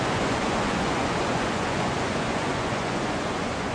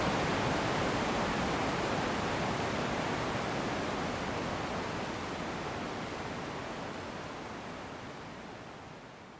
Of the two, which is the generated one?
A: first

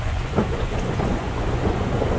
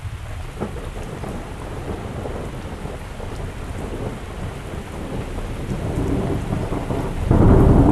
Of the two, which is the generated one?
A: first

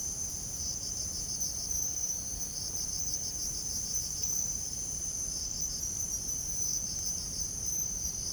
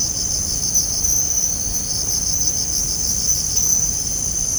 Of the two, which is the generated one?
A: first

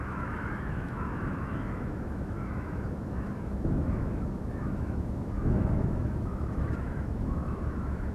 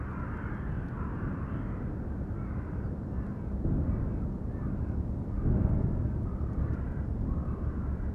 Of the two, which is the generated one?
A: first